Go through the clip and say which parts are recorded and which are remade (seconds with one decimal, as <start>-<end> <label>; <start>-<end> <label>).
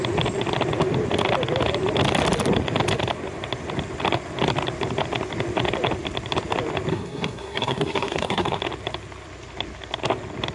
0.0-6.9 recorded; 6.9-8.6 remade; 8.6-10.5 recorded